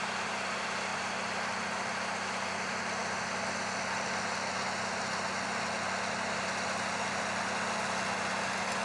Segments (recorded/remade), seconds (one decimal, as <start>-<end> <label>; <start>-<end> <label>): 0.0-8.8 recorded